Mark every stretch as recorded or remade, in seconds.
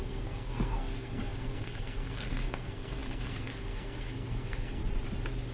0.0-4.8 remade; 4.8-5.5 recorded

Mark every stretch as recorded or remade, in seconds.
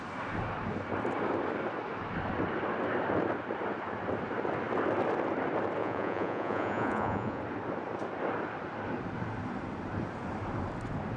0.0-5.8 recorded; 5.8-7.4 remade; 7.4-11.2 recorded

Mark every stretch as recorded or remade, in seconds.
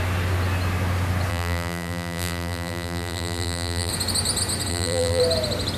0.0-1.3 recorded; 1.3-3.9 remade; 3.9-4.7 recorded; 4.7-5.2 remade; 5.2-5.8 recorded